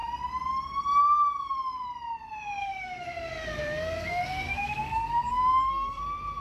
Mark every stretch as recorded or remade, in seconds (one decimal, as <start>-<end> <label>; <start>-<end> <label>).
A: 0.0-2.6 recorded; 2.6-6.0 remade; 6.0-6.4 recorded

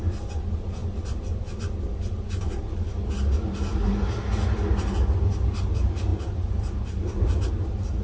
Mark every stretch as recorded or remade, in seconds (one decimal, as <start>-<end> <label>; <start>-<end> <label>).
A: 0.0-8.0 recorded

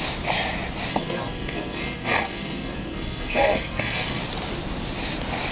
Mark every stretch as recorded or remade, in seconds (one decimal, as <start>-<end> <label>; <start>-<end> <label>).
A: 0.0-0.9 recorded; 0.9-4.2 remade; 4.2-5.5 recorded